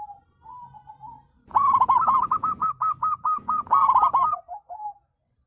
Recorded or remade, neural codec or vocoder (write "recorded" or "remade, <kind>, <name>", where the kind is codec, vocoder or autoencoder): recorded